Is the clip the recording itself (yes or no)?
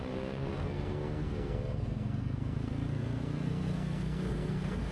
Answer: no